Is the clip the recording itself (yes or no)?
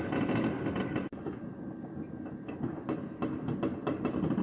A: yes